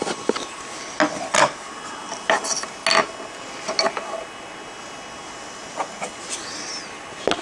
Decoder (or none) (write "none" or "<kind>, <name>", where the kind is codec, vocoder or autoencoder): none